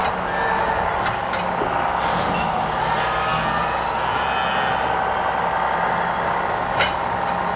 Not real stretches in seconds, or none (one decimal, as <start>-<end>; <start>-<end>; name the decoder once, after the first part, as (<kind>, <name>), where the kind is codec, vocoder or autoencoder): none